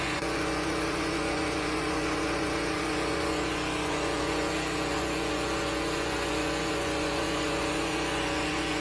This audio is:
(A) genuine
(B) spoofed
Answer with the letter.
B